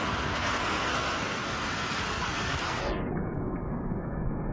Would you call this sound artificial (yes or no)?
yes